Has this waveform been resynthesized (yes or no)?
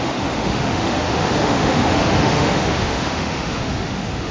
yes